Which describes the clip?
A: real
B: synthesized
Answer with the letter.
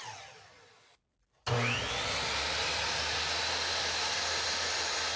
A